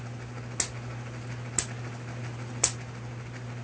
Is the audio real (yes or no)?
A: yes